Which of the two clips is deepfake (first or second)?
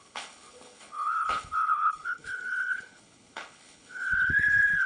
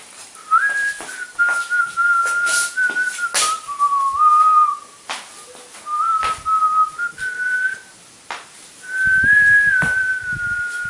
first